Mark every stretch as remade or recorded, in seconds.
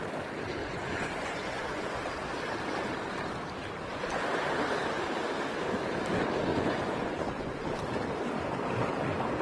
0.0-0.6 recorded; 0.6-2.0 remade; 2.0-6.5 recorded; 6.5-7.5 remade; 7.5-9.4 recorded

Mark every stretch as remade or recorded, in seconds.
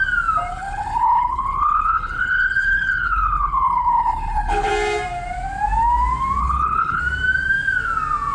0.0-0.5 recorded; 0.5-4.7 remade; 4.7-6.4 recorded; 6.4-7.0 remade; 7.0-8.3 recorded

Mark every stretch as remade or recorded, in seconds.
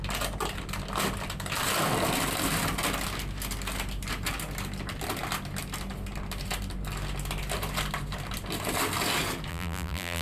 0.0-9.5 recorded; 9.5-10.2 remade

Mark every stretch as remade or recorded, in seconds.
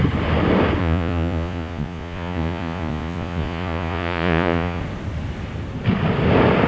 0.0-0.8 recorded; 0.8-4.8 remade; 4.8-6.7 recorded